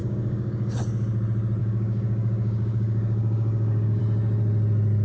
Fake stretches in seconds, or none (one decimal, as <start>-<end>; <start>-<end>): 0.0-0.8; 1.6-4.0